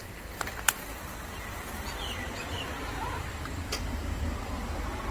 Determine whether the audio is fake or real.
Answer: fake